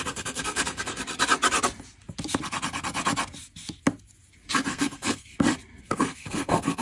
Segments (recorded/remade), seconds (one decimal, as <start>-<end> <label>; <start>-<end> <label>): 0.0-1.0 remade; 1.0-4.7 recorded; 4.7-5.3 remade; 5.3-5.8 recorded; 5.8-6.8 remade